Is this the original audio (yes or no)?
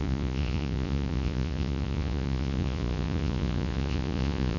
no